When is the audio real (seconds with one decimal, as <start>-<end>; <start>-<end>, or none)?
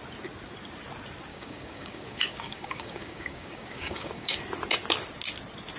0.0-1.3; 4.4-5.8